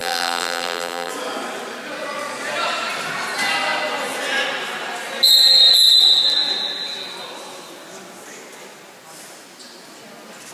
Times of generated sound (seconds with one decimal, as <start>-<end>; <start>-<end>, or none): 0.0-1.1